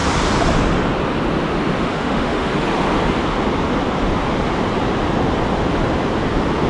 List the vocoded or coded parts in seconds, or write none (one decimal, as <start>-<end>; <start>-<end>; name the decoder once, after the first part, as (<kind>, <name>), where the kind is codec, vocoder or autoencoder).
1.8-2.5 (autoencoder, DAC-VAE)